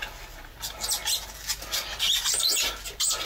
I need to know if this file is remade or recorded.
recorded